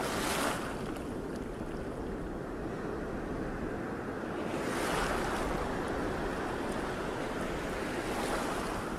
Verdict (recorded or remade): recorded